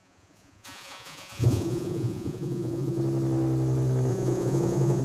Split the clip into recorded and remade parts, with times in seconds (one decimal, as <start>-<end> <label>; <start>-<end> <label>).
0.0-3.0 remade; 3.0-4.1 recorded; 4.1-5.0 remade

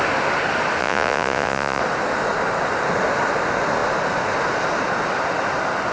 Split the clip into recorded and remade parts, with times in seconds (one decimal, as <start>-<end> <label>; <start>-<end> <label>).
0.0-0.8 recorded; 0.8-1.8 remade; 1.8-5.9 recorded